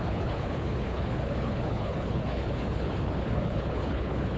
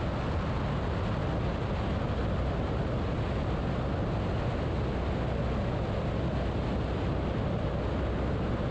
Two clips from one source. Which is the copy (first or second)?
first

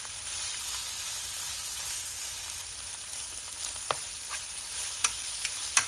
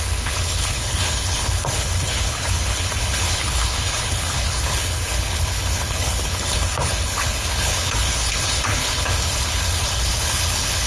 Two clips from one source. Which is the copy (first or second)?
second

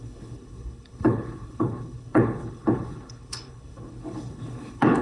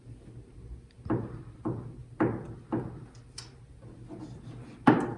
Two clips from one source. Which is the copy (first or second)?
first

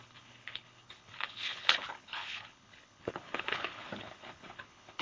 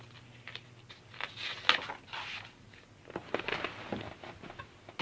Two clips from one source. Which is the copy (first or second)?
first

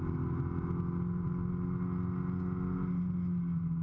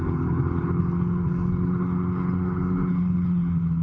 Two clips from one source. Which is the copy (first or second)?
second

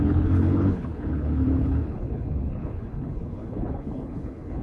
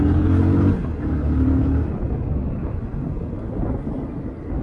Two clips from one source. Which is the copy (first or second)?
first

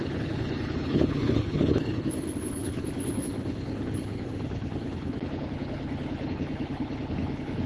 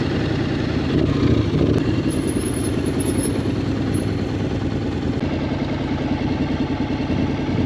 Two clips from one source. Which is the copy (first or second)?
first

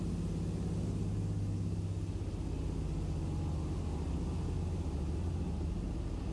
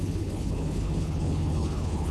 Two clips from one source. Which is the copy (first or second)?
second